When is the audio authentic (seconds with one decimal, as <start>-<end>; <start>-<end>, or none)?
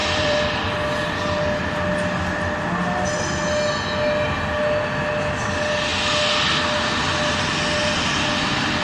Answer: 0.7-2.8; 3.4-8.8